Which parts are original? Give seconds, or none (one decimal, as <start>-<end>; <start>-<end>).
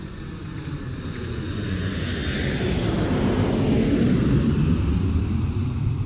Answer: 0.5-1.1; 2.1-6.1